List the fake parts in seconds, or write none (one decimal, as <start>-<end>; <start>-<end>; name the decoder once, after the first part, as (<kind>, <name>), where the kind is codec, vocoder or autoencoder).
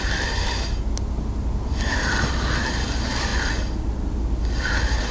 none